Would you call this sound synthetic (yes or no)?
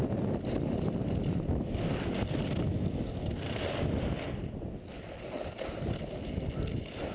no